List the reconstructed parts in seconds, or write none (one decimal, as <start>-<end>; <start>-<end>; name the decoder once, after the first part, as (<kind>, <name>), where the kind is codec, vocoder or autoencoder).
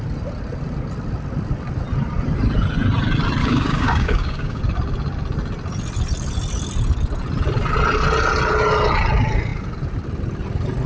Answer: 3.4-4.6 (codec, DAC)